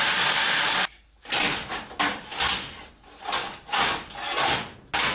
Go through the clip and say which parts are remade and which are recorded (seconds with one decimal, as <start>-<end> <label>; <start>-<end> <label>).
0.0-5.1 recorded